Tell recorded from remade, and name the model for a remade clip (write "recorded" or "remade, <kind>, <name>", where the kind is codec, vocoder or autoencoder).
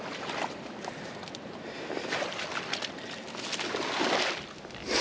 recorded